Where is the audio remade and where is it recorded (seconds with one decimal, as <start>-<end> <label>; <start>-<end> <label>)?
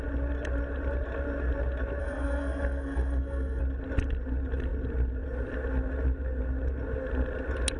0.0-2.0 recorded; 2.0-3.6 remade; 3.6-7.8 recorded